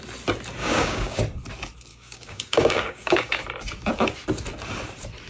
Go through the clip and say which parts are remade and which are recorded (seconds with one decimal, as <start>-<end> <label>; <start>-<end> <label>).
0.0-0.6 recorded; 0.6-1.2 remade; 1.2-1.9 recorded; 1.9-3.4 remade; 3.4-5.3 recorded